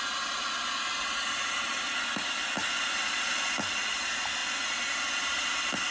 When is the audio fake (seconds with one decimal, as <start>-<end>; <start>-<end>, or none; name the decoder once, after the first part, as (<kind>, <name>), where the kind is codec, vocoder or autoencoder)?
none